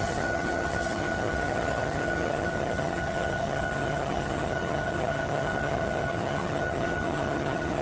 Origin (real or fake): fake